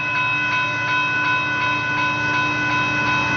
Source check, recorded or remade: recorded